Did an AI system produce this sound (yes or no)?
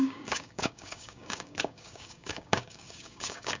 yes